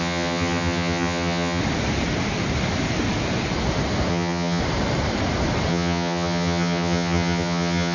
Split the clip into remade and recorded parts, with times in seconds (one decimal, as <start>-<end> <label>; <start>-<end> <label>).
0.0-1.6 remade; 1.6-4.1 recorded; 4.1-4.6 remade; 4.6-5.7 recorded; 5.7-7.9 remade

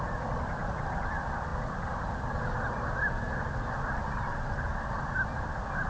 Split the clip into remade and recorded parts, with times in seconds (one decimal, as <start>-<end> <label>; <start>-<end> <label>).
0.0-5.9 recorded

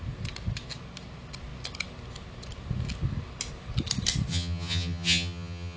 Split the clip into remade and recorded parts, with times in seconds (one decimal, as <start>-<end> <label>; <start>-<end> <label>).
0.0-4.3 recorded; 4.3-5.8 remade

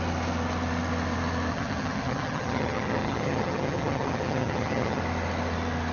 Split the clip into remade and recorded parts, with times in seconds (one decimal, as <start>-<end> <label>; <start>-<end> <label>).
0.0-1.5 recorded; 1.5-5.0 remade; 5.0-5.9 recorded

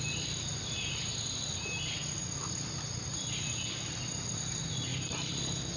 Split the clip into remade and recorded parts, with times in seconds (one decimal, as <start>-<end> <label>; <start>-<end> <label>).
0.0-5.8 recorded

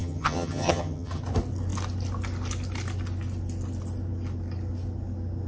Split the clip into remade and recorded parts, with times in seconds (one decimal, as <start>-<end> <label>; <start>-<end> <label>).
0.0-1.2 remade; 1.2-5.5 recorded